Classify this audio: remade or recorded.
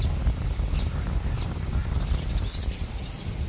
recorded